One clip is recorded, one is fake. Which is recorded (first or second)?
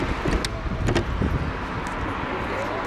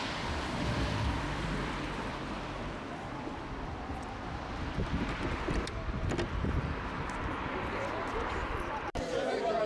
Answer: first